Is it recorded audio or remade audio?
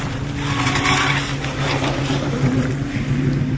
recorded